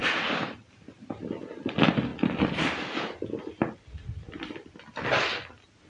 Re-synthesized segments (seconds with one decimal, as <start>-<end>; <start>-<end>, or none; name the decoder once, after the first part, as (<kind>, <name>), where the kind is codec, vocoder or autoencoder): none